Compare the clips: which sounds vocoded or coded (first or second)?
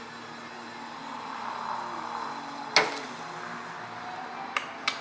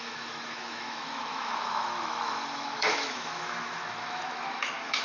second